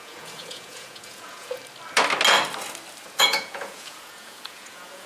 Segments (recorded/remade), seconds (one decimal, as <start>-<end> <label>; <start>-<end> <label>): 0.0-1.6 remade; 1.6-3.0 recorded; 3.0-5.1 remade